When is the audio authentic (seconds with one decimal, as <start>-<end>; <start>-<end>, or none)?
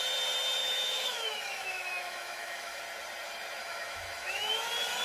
0.0-0.6; 2.8-3.6; 4.5-5.0